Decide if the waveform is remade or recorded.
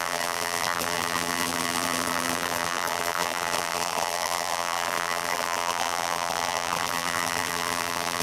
remade